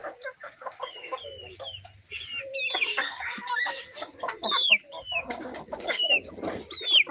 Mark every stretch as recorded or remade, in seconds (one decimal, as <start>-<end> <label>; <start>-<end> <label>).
0.0-1.3 remade; 1.3-2.9 recorded; 2.9-6.3 remade; 6.3-7.1 recorded